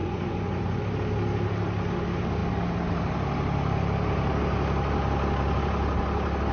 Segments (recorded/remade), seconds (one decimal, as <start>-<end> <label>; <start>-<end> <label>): 0.0-0.8 remade; 0.8-6.5 recorded